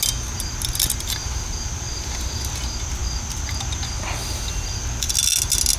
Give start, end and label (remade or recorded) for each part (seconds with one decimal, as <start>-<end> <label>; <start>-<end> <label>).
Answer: 0.0-5.8 recorded